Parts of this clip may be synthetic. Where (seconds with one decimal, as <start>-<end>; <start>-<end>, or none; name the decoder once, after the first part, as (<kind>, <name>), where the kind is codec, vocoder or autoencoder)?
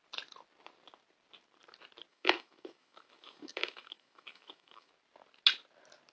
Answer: 2.1-4.9 (autoencoder, DAC-VAE)